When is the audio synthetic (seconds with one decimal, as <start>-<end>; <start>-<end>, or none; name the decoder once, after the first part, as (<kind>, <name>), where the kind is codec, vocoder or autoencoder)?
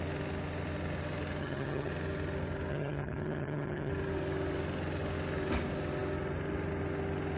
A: 1.4-1.9 (vocoder, HiFi-GAN); 2.7-3.9